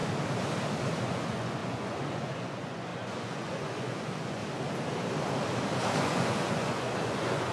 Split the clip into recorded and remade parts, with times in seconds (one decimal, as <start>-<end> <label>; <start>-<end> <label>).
0.0-1.0 recorded; 1.0-4.4 remade; 4.4-6.0 recorded; 6.0-7.5 remade